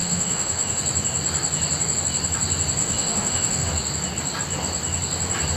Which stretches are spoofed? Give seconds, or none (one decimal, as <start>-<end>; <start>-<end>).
0.0-0.8; 2.8-3.7